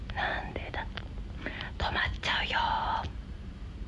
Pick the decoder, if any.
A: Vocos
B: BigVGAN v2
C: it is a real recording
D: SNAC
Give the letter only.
B